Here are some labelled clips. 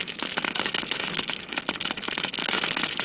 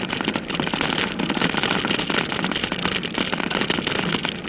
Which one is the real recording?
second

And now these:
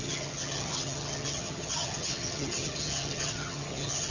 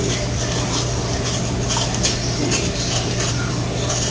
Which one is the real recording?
second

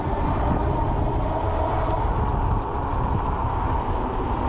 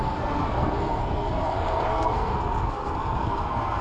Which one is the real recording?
first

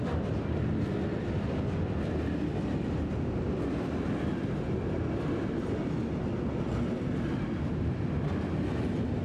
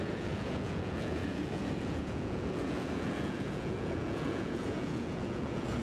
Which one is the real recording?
first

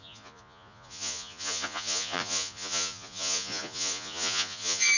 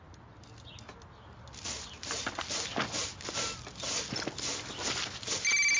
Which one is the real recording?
second